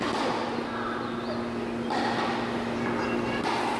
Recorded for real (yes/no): yes